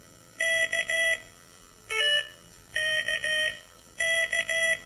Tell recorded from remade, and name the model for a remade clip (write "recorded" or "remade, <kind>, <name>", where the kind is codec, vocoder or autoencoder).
remade, vocoder, BigVGAN v2